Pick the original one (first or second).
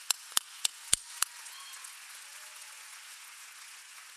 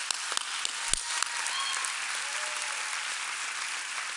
second